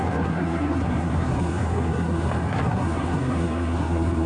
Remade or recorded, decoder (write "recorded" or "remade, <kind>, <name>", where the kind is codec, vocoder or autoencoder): remade, codec, SNAC